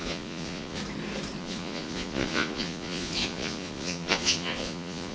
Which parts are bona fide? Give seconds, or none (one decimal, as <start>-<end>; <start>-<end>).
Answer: 0.8-1.4